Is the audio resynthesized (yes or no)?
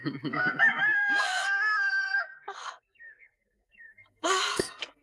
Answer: yes